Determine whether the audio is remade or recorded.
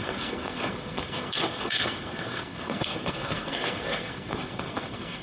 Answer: remade